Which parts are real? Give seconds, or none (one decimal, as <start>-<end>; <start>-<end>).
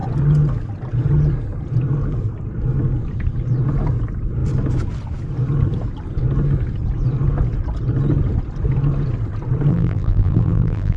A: 0.0-9.7